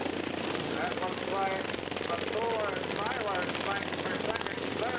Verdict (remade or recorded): recorded